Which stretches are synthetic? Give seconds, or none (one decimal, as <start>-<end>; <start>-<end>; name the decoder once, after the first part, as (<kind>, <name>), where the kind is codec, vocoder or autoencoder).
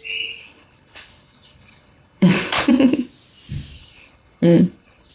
0.4-2.7 (codec, HILCodec); 3.8-5.1